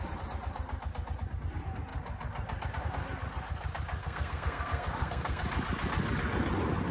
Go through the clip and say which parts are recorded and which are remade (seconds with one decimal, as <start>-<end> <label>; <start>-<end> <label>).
0.0-4.0 recorded; 4.0-5.4 remade; 5.4-6.9 recorded